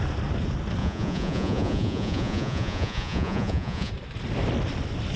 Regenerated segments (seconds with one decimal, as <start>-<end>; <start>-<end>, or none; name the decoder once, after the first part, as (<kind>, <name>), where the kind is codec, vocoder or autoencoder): 0.8-3.9 (vocoder, Vocos)